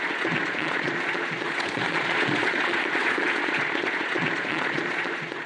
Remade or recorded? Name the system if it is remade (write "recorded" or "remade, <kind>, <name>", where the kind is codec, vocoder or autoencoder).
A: remade, vocoder, Vocos